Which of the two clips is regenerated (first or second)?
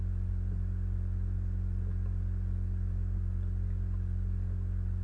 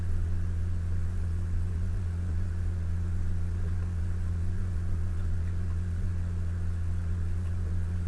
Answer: second